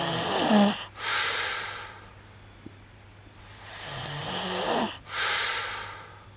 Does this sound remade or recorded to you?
recorded